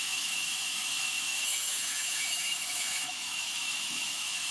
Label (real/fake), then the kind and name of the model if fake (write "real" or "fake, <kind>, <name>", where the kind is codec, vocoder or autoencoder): fake, autoencoder, DAC-VAE